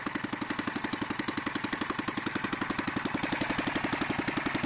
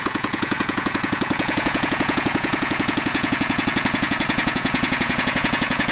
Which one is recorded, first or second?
first